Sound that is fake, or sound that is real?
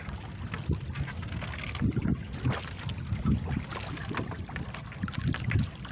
real